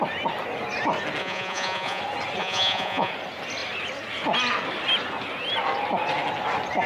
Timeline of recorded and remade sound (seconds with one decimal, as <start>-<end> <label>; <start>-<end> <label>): 0.0-1.2 recorded; 1.2-2.0 remade; 2.0-2.4 recorded; 2.4-3.1 remade; 3.1-6.9 recorded